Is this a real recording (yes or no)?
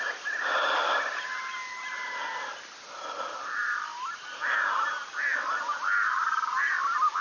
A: yes